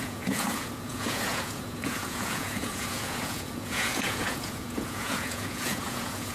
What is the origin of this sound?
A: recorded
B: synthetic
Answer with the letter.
B